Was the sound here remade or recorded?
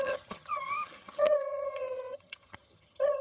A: remade